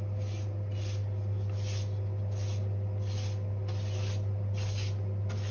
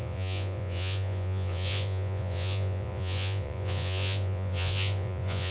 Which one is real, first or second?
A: first